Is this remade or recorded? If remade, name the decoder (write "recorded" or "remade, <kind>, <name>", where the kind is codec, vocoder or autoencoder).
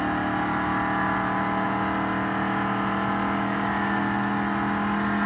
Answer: recorded